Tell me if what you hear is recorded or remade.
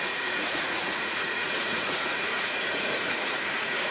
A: remade